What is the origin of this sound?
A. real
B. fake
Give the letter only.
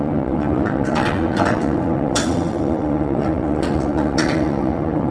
B